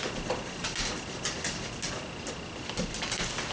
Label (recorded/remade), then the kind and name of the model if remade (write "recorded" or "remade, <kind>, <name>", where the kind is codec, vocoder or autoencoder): recorded